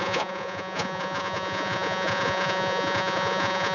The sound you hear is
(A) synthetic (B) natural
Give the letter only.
A